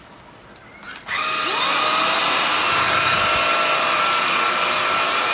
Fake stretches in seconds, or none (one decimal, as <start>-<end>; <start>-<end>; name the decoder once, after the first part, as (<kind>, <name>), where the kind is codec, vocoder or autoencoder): none